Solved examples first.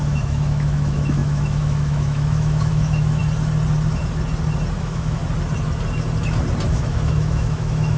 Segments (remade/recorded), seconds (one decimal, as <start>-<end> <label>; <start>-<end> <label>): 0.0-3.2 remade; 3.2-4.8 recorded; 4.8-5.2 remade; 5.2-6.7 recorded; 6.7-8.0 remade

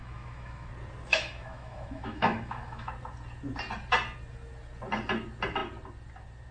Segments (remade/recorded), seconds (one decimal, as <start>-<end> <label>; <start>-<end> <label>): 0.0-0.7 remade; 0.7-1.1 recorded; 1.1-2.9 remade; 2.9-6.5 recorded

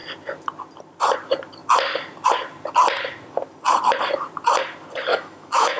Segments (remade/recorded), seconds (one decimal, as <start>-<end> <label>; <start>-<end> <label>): 0.0-5.1 recorded; 5.1-5.8 remade

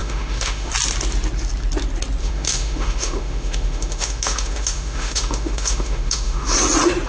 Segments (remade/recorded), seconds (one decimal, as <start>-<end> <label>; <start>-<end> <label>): 0.0-0.7 remade; 0.7-2.2 recorded; 2.2-6.5 remade; 6.5-7.1 recorded